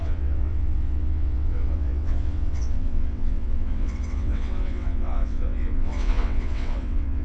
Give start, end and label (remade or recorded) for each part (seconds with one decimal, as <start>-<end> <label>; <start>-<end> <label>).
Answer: 0.0-7.2 remade